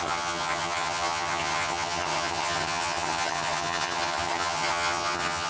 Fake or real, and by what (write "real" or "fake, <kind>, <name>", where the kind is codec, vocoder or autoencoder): fake, vocoder, HiFi-GAN